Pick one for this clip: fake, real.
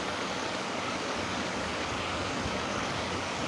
fake